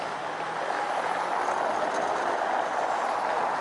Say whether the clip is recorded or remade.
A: recorded